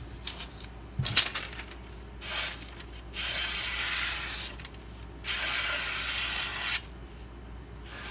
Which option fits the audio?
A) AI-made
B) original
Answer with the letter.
B